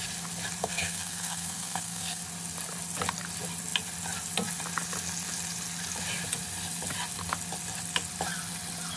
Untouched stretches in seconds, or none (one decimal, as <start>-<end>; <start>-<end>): 0.0-0.6; 2.2-9.0